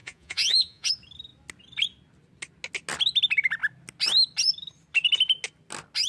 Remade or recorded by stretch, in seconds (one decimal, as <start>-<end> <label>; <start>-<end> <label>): 0.0-0.9 remade; 0.9-6.1 recorded